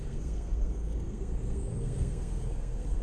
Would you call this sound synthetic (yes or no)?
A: yes